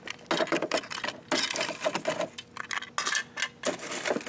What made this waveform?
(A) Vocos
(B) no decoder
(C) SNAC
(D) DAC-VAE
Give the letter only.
B